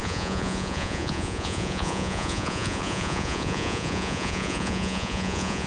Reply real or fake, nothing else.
fake